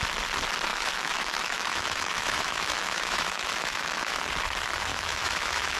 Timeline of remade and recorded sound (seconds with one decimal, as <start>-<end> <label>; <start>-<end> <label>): 0.0-0.7 recorded; 0.7-4.2 remade; 4.2-4.9 recorded; 4.9-5.8 remade